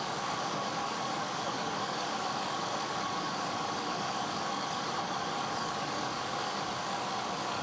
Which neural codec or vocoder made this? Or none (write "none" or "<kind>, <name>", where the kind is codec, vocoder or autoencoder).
codec, DAC